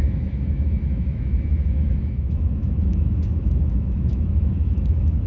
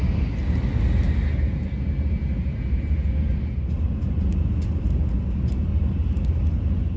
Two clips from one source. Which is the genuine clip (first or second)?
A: second